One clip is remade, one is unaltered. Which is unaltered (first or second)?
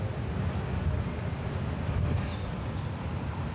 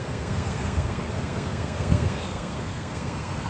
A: first